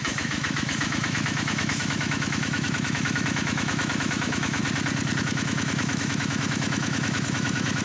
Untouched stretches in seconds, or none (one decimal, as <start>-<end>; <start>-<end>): 4.6-5.2